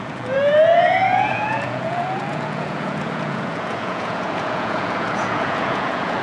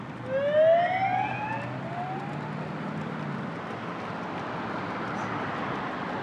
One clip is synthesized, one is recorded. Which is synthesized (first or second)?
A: first